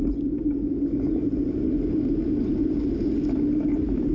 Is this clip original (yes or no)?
yes